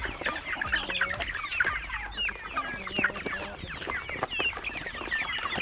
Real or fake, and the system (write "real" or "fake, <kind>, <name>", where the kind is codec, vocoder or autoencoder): real